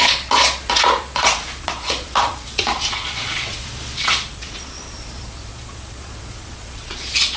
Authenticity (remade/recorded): remade